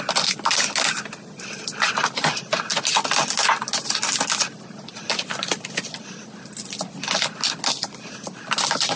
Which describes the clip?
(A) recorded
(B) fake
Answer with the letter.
A